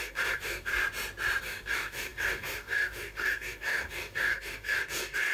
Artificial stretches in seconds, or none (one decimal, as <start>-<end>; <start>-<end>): 0.0-0.7; 1.4-5.3